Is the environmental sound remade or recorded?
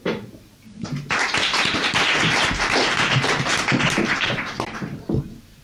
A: remade